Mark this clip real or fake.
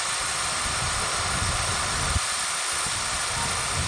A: real